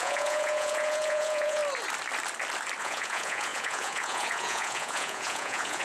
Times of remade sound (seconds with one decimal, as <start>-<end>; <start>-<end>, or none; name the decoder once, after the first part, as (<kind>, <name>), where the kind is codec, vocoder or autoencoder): 0.0-1.6 (vocoder, Vocos); 2.8-5.8